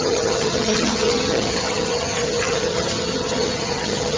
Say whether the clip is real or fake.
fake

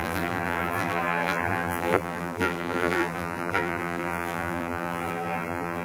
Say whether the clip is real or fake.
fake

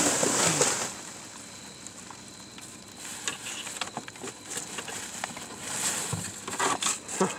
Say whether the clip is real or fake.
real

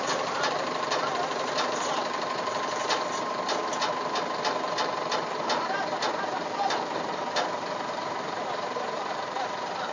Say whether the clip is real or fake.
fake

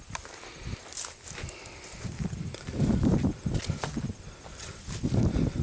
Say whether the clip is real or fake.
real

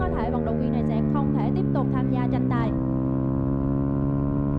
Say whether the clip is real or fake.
real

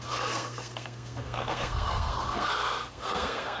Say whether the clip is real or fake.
fake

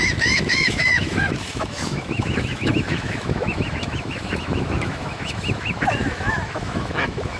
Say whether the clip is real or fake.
fake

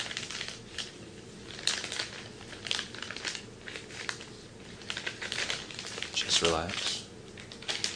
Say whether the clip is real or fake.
real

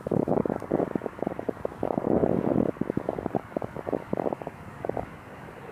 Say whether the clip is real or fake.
fake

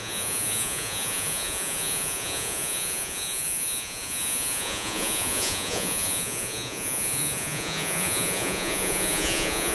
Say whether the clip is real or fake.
fake